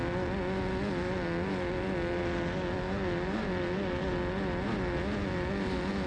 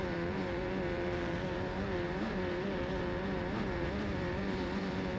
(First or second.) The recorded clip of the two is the first